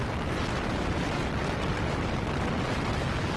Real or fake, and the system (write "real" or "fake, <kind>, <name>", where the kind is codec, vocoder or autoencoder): real